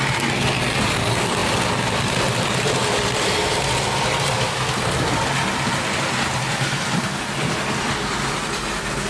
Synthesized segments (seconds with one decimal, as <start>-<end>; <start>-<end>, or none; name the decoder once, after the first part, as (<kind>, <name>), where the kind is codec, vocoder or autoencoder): none